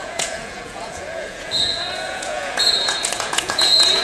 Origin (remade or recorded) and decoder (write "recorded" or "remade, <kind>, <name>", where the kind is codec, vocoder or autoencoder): remade, vocoder, Vocos